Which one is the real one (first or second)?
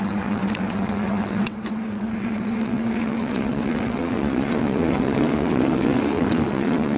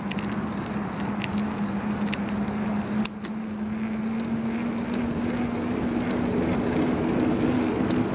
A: second